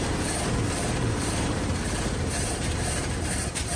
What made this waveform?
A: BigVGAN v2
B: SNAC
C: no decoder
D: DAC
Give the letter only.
A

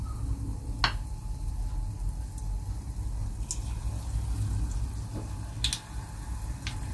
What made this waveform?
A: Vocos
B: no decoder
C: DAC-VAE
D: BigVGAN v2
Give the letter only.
B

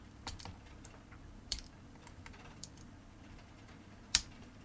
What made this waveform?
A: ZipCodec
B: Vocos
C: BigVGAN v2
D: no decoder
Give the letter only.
C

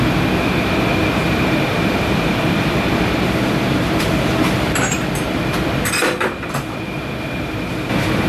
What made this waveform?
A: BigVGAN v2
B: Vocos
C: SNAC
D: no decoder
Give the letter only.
A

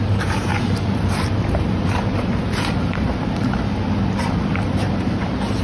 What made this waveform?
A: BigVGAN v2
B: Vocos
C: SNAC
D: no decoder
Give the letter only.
A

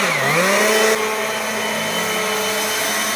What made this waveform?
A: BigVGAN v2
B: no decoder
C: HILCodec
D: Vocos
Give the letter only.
B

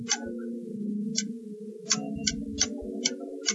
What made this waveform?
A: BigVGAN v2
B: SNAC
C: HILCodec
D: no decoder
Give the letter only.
D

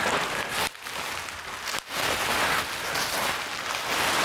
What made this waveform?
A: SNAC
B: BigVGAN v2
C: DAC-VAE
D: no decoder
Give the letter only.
D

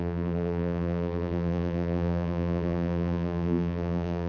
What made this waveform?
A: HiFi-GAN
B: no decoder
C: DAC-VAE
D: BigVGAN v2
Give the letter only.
D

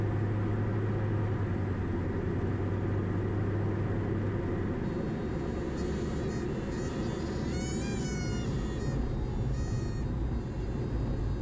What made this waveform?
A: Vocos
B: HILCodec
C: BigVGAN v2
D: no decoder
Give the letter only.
D